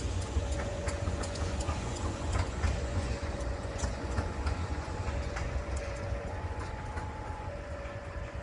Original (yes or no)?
no